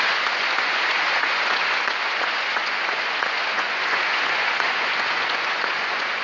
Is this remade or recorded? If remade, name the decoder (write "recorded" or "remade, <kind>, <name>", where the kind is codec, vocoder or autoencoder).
remade, vocoder, Vocos